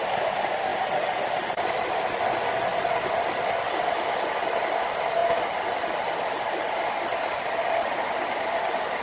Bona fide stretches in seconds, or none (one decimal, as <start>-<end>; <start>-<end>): 0.0-9.0